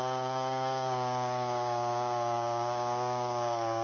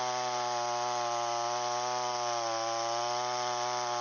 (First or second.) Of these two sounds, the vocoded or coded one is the first